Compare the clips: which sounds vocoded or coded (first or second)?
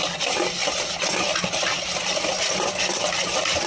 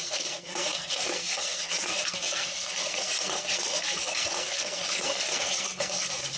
second